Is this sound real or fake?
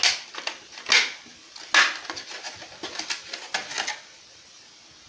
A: real